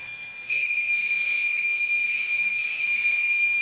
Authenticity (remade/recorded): remade